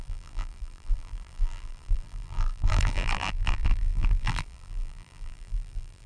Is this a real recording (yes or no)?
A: no